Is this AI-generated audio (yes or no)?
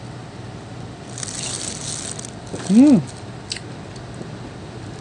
no